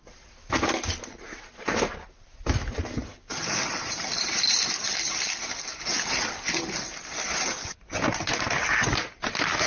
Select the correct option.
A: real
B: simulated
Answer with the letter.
A